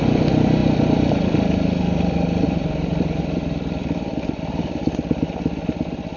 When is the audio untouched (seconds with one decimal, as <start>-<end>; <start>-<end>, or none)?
0.0-6.2